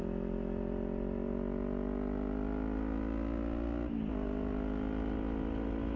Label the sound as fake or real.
real